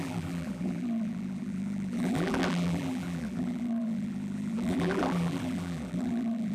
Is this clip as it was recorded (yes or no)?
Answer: no